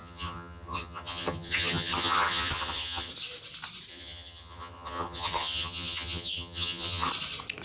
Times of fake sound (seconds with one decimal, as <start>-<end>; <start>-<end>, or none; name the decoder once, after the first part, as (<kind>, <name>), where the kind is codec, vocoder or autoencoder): 0.0-3.1 (vocoder, HiFi-GAN); 3.9-7.1